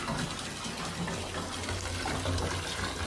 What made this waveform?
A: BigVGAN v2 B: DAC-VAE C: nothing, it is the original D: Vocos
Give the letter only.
C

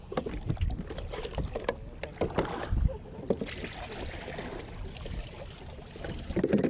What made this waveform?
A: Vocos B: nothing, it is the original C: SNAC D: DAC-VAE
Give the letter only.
B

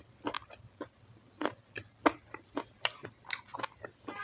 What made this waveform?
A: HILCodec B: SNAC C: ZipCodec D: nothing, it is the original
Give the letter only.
D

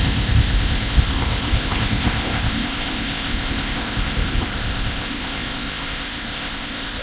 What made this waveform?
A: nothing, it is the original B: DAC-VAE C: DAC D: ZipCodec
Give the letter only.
D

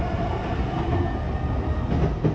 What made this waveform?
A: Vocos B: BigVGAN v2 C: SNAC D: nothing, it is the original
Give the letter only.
D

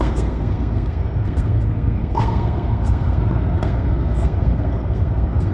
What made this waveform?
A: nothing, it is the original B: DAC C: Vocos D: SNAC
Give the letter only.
D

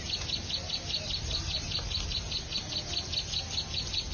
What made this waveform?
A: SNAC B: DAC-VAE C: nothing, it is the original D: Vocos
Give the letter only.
C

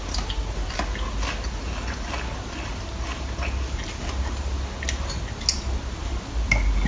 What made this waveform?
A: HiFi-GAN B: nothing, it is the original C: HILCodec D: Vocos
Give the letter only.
B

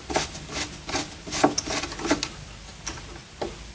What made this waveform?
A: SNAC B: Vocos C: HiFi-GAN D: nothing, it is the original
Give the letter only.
D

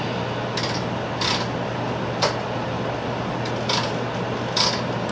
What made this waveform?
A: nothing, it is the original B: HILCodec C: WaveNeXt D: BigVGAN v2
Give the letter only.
A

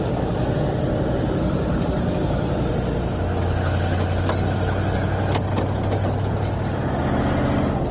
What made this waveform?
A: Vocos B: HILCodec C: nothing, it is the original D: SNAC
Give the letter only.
C